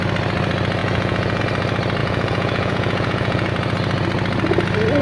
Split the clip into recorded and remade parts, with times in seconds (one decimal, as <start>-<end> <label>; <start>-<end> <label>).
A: 0.0-0.8 recorded; 0.8-1.4 remade; 1.4-2.0 recorded; 2.0-3.5 remade; 3.5-5.0 recorded